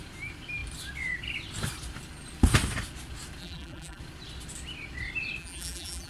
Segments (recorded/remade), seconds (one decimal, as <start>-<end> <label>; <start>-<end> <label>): 0.0-3.4 recorded; 3.4-4.0 remade; 4.0-5.4 recorded; 5.4-6.1 remade

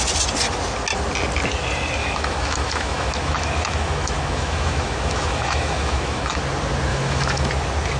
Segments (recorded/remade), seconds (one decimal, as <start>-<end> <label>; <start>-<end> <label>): 0.0-2.0 recorded; 2.0-6.4 remade; 6.4-6.9 recorded; 6.9-7.5 remade; 7.5-8.0 recorded